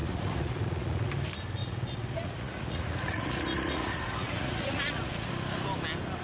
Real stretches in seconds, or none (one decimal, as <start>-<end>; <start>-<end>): 1.1-1.6; 5.3-6.2